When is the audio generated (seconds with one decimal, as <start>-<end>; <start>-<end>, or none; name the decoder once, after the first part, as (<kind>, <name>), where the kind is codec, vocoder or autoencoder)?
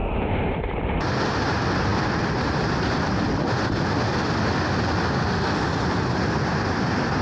none